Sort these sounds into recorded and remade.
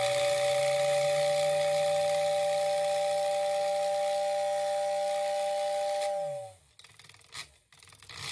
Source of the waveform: recorded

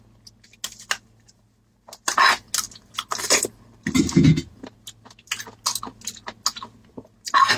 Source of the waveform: recorded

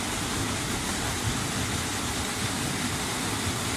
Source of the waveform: recorded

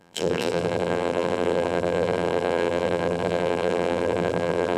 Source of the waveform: remade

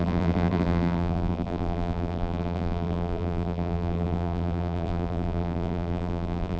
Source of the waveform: remade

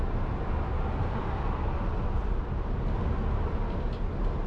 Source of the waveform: recorded